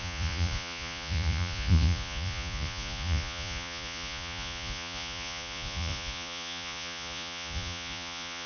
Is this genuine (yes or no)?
no